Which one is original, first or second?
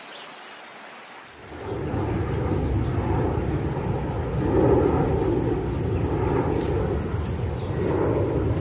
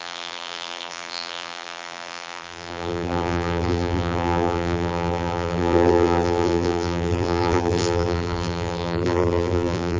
first